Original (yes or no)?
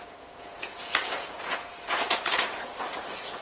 no